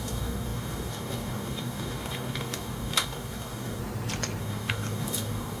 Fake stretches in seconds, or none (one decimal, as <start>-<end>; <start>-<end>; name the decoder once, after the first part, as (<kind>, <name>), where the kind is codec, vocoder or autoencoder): 0.0-3.8 (codec, DAC); 4.4-5.6